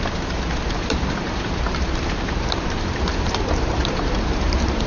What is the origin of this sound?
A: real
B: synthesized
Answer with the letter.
B